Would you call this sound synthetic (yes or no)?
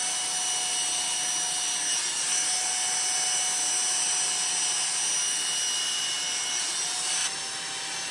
no